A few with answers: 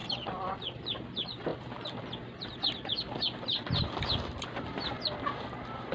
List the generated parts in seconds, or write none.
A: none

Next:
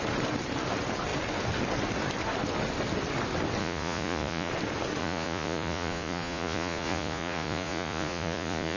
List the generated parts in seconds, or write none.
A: 3.6-4.5 (vocoder, Vocos); 5.0-8.8

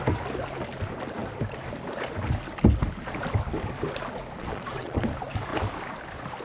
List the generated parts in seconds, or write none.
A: 4.4-5.0 (vocoder, Vocos)

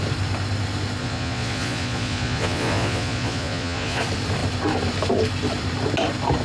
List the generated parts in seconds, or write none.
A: 1.0-4.0 (vocoder, Vocos)

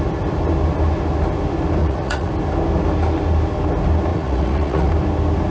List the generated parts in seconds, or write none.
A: 1.8-2.3 (vocoder, Vocos); 4.1-4.9

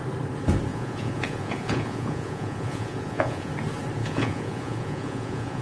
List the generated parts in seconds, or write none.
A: 0.7-3.5 (vocoder, Vocos); 4.0-5.6